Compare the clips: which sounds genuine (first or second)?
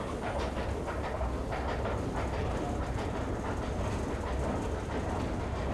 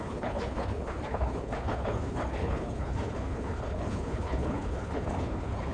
first